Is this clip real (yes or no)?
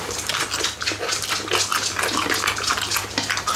yes